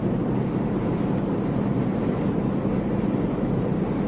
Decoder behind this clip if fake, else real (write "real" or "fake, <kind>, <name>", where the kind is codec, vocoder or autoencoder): real